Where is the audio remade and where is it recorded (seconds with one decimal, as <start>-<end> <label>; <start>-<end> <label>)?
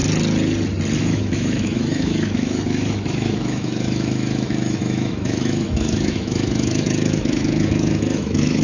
0.0-1.0 recorded; 1.0-8.6 remade